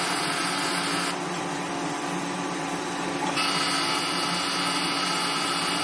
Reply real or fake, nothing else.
real